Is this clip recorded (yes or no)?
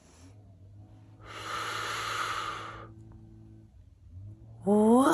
yes